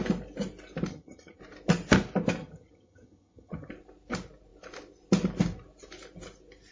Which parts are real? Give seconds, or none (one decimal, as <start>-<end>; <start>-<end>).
0.0-0.9; 1.4-2.4; 3.7-6.7